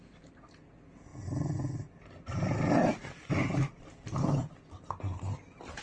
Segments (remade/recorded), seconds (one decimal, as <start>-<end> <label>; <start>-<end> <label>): 0.0-1.1 recorded; 1.1-4.4 remade; 4.4-5.8 recorded